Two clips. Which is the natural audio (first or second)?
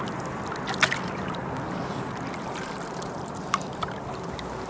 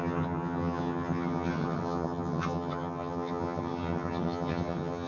first